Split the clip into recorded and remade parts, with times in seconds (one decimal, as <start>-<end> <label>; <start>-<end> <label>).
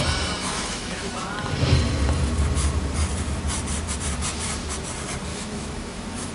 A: 0.0-0.4 recorded; 0.4-1.1 remade; 1.1-5.3 recorded; 5.3-6.3 remade